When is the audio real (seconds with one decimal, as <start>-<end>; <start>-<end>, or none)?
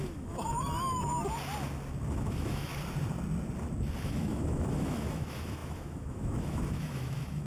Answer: 1.1-2.1; 2.7-4.0